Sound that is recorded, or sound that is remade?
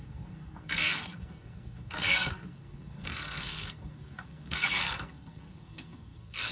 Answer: remade